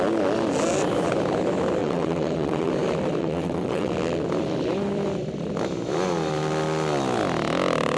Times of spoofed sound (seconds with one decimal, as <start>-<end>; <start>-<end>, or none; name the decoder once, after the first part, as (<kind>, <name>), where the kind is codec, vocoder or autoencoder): 1.8-2.7 (vocoder, WaveNeXt); 3.2-3.9